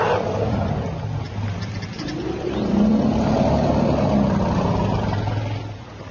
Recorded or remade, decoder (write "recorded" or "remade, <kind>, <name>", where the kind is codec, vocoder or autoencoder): recorded